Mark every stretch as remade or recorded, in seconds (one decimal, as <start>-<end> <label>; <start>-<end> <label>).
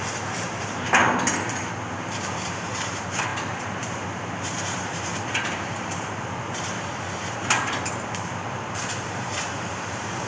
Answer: 0.0-1.0 remade; 1.0-1.9 recorded; 1.9-10.3 remade